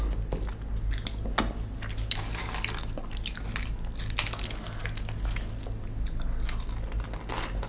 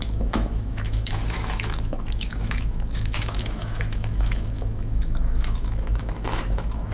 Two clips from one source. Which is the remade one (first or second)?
second